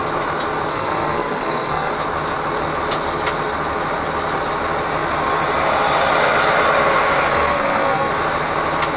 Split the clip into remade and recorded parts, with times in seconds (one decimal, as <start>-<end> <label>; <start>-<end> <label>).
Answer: 0.0-0.7 recorded; 0.7-1.9 remade; 1.9-7.3 recorded; 7.3-8.1 remade; 8.1-9.0 recorded